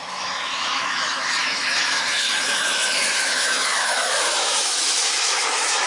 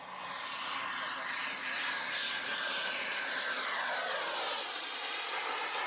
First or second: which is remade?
first